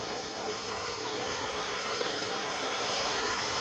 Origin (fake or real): fake